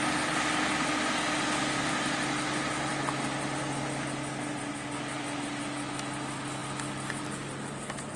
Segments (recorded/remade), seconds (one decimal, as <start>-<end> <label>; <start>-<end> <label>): 0.0-8.2 recorded